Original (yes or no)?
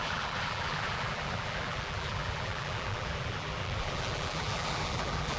no